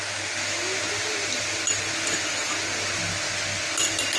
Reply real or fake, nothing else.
real